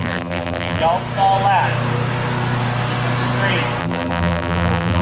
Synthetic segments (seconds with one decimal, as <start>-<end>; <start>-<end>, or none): 0.0-0.8; 3.8-5.0